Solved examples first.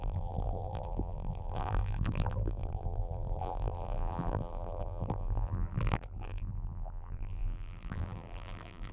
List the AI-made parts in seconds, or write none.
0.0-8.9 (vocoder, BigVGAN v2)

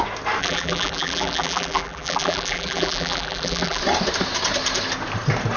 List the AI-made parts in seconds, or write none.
0.4-3.8 (vocoder, BigVGAN v2)

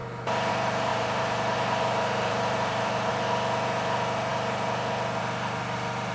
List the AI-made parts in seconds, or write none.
0.9-3.1 (vocoder, BigVGAN v2)

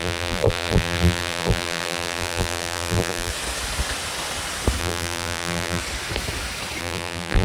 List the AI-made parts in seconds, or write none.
0.0-3.3 (vocoder, BigVGAN v2); 4.8-5.8; 6.8-7.4

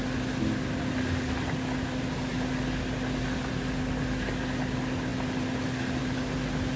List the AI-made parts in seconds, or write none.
none